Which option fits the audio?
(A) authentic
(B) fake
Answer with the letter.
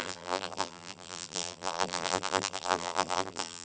B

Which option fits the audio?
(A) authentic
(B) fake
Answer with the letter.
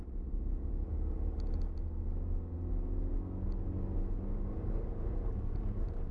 A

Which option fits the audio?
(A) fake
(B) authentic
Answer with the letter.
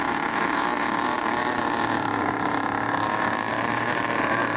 A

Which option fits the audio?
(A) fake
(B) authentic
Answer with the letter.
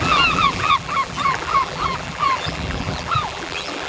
A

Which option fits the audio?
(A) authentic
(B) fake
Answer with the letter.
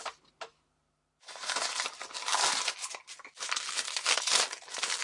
A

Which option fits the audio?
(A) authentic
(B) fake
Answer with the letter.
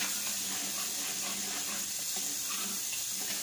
A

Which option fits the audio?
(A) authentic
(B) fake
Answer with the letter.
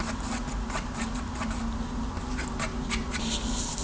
A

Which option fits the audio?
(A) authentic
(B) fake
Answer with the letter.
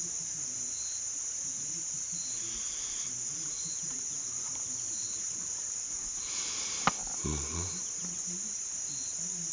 B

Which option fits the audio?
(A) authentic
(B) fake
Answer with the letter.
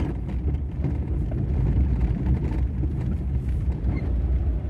B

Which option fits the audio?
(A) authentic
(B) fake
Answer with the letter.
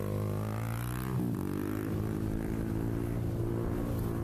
A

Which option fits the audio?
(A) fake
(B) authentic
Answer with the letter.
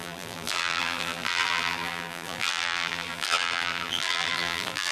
A